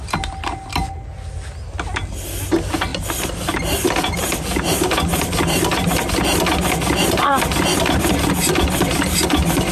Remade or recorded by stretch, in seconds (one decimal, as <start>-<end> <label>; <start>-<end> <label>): 0.0-9.7 recorded